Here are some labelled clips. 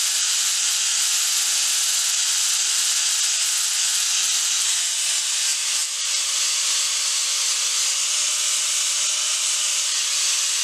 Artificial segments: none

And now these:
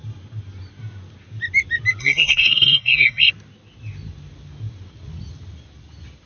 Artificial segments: 2.0-3.3 (codec, SNAC)

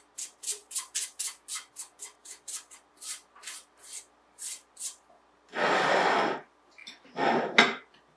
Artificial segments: none

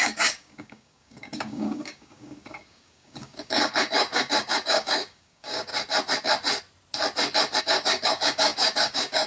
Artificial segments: 0.0-5.7 (codec, DAC); 7.6-9.3